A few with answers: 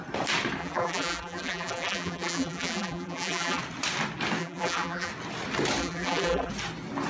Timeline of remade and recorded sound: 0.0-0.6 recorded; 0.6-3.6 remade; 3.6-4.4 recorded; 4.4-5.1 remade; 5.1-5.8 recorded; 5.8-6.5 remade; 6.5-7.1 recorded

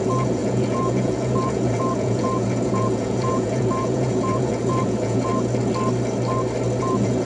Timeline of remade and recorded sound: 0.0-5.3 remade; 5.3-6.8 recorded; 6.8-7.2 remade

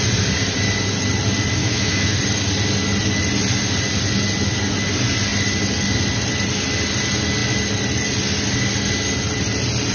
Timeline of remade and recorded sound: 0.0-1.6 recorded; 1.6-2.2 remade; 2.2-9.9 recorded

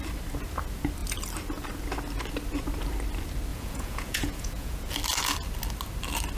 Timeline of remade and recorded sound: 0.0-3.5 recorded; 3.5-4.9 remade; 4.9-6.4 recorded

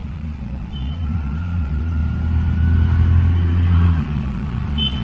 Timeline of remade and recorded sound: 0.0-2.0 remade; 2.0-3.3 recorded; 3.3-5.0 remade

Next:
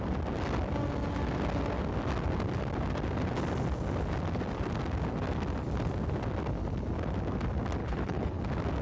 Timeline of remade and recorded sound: 0.0-7.8 recorded; 7.8-8.4 remade; 8.4-8.8 recorded

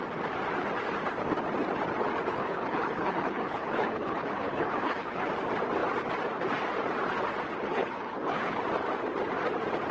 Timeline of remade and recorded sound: 0.0-2.3 recorded; 2.3-5.3 remade; 5.3-7.7 recorded; 7.7-8.6 remade; 8.6-9.9 recorded